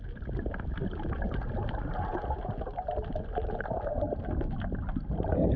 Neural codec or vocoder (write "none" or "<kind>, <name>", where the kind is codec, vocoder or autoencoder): none